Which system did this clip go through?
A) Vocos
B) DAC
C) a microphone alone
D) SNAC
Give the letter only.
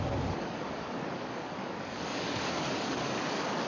B